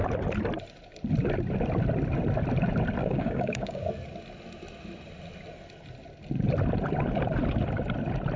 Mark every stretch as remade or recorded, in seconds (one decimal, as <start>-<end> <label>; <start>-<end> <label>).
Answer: 0.0-3.0 recorded; 3.0-3.9 remade; 3.9-8.4 recorded